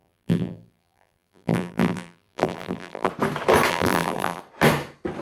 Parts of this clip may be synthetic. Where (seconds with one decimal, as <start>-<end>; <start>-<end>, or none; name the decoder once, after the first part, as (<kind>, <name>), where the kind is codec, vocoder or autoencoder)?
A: 0.0-3.1 (vocoder, BigVGAN v2); 3.7-4.4